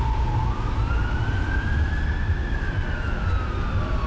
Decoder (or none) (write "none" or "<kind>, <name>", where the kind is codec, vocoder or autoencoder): none